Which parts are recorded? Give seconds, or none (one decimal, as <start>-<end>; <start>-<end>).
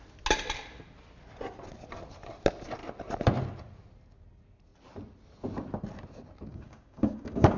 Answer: 0.0-6.5